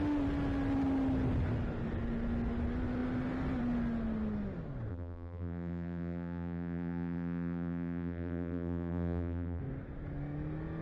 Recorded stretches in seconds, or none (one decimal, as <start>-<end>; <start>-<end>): 0.0-4.9; 9.6-10.8